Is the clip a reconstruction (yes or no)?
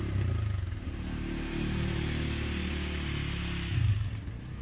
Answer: no